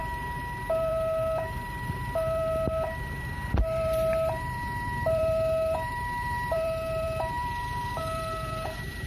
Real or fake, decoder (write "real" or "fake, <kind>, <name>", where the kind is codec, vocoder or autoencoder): fake, vocoder, BigVGAN v2